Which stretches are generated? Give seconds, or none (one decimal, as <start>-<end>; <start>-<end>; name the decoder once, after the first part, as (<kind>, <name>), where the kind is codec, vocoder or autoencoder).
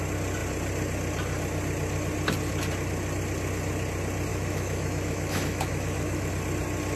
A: 4.3-6.3 (autoencoder, DAC-VAE)